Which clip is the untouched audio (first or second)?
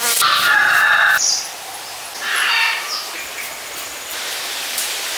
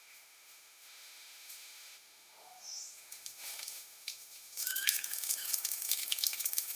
first